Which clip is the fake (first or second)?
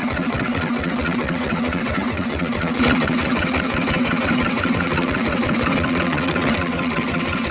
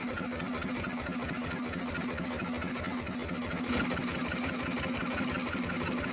first